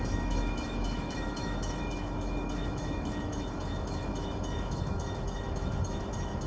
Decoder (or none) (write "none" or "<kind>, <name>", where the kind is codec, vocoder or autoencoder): autoencoder, DAC-VAE